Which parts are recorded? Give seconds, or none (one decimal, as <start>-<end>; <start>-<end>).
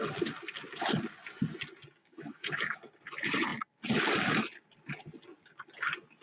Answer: 0.0-2.0; 2.8-6.2